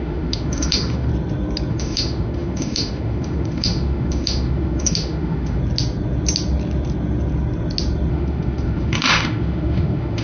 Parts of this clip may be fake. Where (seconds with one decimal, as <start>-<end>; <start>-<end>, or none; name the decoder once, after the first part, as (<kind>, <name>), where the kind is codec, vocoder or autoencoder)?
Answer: 0.0-1.1 (autoencoder, DAC-VAE); 1.7-5.6; 8.1-10.2

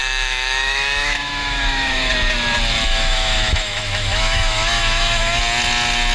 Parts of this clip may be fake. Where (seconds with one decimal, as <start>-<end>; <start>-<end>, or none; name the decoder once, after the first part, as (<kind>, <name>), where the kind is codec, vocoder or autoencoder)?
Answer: 0.0-2.1 (autoencoder, DAC-VAE); 2.9-5.4

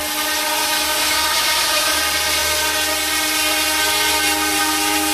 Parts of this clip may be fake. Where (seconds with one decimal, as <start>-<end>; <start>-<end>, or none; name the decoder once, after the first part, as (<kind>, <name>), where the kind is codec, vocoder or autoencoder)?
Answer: 0.6-2.0 (autoencoder, DAC-VAE)

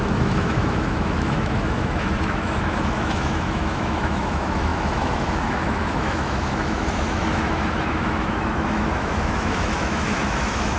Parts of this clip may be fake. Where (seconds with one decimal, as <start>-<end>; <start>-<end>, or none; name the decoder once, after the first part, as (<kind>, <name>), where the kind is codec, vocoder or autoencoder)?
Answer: 0.0-10.8 (autoencoder, DAC-VAE)

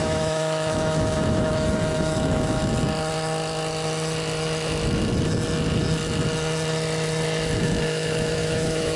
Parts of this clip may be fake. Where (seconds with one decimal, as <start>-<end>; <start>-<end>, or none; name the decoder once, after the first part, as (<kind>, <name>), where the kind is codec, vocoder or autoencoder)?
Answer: 0.0-2.6 (autoencoder, DAC-VAE); 7.6-9.0

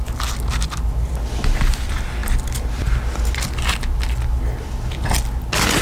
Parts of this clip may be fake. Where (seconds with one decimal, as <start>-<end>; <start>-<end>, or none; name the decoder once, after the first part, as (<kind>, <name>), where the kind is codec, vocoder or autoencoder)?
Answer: none